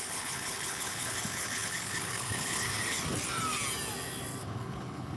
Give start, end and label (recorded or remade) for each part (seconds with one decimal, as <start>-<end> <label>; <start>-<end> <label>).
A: 0.0-3.0 remade; 3.0-4.4 recorded; 4.4-5.2 remade